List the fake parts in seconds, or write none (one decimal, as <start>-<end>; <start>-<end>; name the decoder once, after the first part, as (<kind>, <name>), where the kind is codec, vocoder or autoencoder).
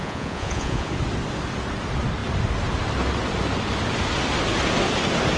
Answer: 0.0-0.9 (vocoder, Vocos)